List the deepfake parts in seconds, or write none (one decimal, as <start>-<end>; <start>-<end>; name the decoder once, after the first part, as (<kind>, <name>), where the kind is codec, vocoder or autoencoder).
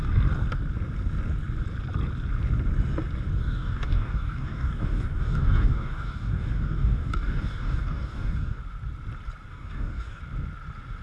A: 3.4-8.6 (codec, DAC); 9.5-10.2